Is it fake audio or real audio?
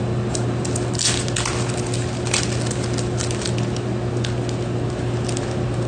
real